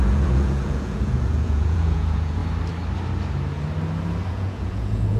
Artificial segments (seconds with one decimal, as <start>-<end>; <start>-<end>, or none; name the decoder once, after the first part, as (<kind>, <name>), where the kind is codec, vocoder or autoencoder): 0.0-2.4 (vocoder, Vocos); 4.3-5.2